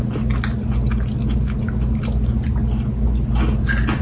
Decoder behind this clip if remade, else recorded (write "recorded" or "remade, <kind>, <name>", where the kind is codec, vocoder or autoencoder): recorded